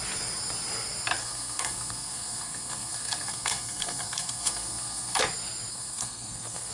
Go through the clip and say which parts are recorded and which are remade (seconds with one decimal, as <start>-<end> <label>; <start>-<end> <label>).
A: 0.0-1.2 recorded; 1.2-5.2 remade; 5.2-5.7 recorded; 5.7-6.7 remade